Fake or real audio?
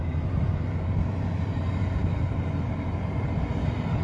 fake